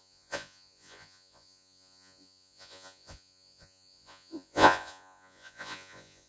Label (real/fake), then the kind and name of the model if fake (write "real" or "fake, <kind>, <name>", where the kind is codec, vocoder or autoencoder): fake, vocoder, Vocos